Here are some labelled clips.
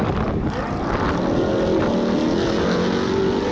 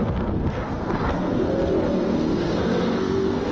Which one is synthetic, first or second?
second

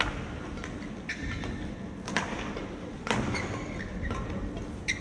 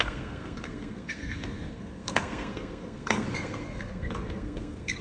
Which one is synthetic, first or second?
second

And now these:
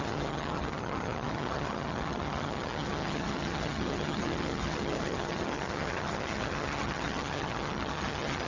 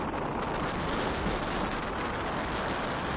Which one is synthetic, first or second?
first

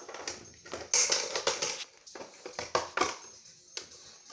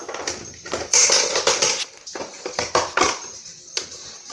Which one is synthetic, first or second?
second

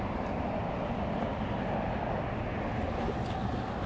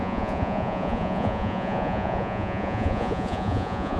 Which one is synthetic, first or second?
second